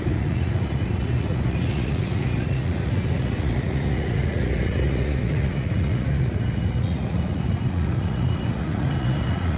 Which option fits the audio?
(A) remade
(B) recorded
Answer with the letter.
A